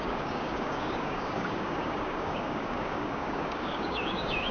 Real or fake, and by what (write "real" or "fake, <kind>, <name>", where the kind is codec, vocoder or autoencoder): fake, codec, DAC